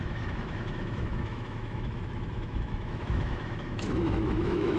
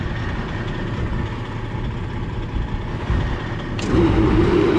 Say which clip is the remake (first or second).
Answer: first